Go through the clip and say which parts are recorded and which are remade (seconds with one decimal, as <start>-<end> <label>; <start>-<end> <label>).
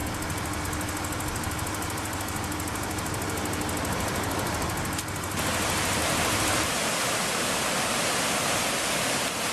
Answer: 0.0-6.0 recorded; 6.0-7.8 remade; 7.8-9.5 recorded